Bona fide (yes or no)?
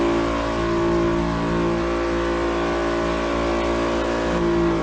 yes